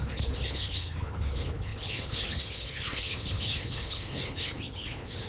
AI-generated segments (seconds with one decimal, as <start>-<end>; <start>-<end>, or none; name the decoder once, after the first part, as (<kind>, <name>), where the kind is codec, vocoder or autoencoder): 0.0-5.3 (codec, HILCodec)